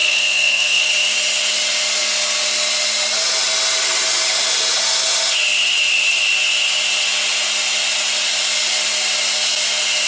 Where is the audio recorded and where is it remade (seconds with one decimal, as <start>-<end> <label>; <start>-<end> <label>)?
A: 0.0-0.9 remade; 0.9-10.1 recorded